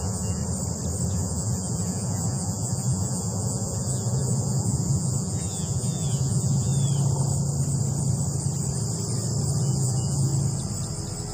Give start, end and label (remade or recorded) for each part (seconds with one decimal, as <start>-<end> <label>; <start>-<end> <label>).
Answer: 0.0-0.4 remade; 0.4-1.1 recorded; 1.1-6.7 remade; 6.7-9.6 recorded; 9.6-10.3 remade; 10.3-11.3 recorded